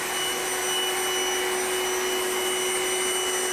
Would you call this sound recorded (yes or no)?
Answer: yes